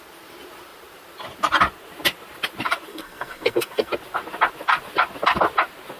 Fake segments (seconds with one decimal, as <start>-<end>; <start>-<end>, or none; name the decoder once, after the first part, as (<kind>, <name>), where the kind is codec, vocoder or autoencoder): 2.9-3.9 (codec, SNAC)